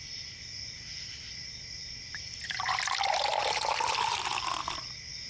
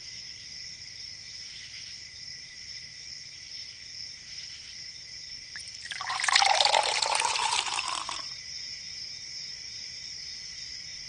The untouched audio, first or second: first